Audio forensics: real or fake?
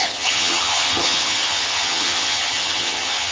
fake